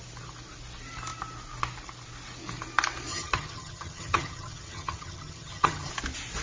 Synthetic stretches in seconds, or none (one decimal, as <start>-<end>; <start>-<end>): 3.1-5.9